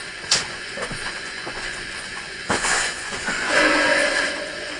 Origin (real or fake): fake